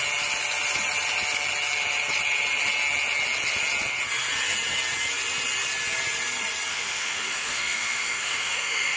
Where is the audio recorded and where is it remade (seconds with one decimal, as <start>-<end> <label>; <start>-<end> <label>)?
0.0-6.7 recorded; 6.7-9.0 remade

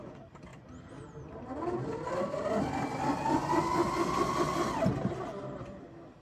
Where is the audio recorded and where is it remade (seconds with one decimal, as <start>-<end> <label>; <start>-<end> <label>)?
0.0-6.2 recorded

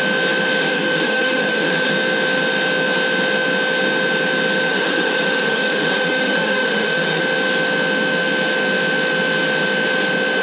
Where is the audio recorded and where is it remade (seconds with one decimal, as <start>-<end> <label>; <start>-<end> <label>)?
0.0-0.6 recorded; 0.6-1.9 remade; 1.9-4.7 recorded; 4.7-7.2 remade; 7.2-10.4 recorded

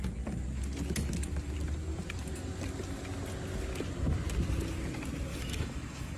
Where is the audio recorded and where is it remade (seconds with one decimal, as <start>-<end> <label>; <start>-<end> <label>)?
0.0-5.3 recorded; 5.3-6.2 remade

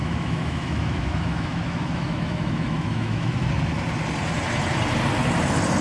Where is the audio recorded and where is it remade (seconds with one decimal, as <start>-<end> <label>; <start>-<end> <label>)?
0.0-3.5 remade; 3.5-5.8 recorded